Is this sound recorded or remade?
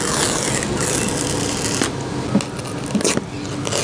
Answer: recorded